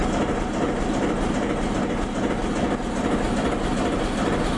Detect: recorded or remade recorded